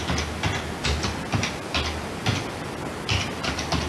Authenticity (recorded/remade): recorded